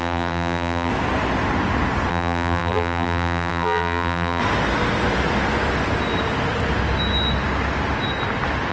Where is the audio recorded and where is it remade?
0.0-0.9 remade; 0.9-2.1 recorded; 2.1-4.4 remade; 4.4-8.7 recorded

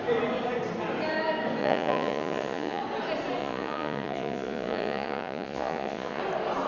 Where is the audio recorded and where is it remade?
0.0-1.6 recorded; 1.6-2.8 remade; 2.8-3.4 recorded; 3.4-6.2 remade; 6.2-6.7 recorded

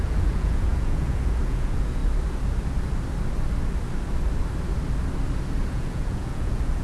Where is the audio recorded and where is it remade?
0.0-2.0 remade; 2.0-5.7 recorded; 5.7-6.8 remade

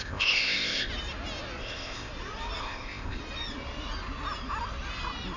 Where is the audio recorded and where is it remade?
0.0-0.9 remade; 0.9-1.6 recorded; 1.6-2.1 remade; 2.1-2.6 recorded; 2.6-3.2 remade; 3.2-5.4 recorded

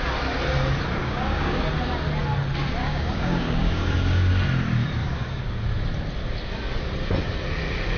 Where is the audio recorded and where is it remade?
0.0-1.0 recorded; 1.0-1.7 remade; 1.7-2.8 recorded; 2.8-4.3 remade; 4.3-5.0 recorded; 5.0-5.6 remade; 5.6-8.0 recorded